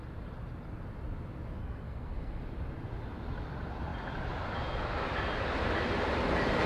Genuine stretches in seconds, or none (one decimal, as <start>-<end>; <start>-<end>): 0.0-1.6; 2.4-6.7